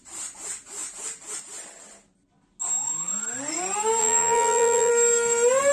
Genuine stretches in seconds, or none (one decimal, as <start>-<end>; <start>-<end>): 0.0-4.0; 4.9-5.7